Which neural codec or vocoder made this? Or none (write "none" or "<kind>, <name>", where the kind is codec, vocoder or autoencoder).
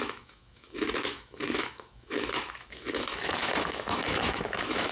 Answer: autoencoder, DAC-VAE